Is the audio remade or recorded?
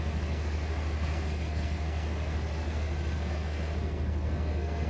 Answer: remade